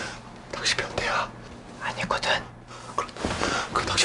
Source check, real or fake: real